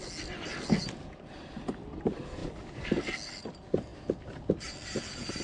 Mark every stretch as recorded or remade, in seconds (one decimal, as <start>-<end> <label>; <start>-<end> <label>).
0.0-5.4 recorded